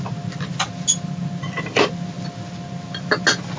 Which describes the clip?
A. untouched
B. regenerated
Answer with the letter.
A